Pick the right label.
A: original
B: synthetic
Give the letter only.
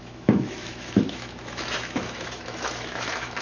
B